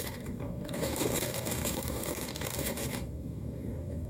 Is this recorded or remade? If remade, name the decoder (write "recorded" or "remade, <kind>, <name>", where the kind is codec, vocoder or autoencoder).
remade, codec, DAC